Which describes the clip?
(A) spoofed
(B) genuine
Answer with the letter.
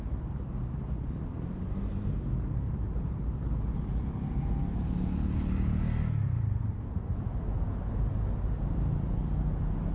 B